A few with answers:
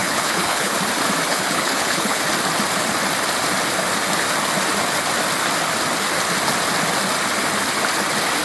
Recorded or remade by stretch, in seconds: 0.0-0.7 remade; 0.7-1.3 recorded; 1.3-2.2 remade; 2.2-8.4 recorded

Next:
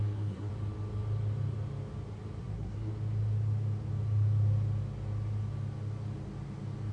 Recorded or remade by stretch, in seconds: 0.0-0.5 remade; 0.5-2.4 recorded; 2.4-2.9 remade; 2.9-6.9 recorded

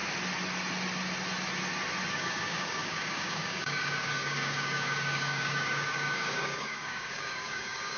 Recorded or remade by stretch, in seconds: 0.0-2.1 recorded; 2.1-8.0 remade

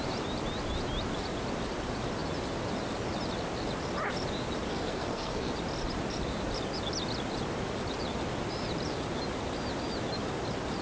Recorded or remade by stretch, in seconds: 0.0-4.7 recorded; 4.7-5.5 remade; 5.5-10.8 recorded